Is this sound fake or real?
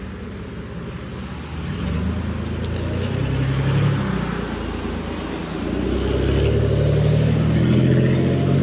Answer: real